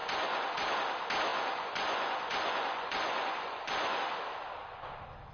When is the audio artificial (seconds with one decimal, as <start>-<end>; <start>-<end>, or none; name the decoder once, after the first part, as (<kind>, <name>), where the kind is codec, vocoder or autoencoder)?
0.0-0.7 (vocoder, Vocos); 1.3-4.0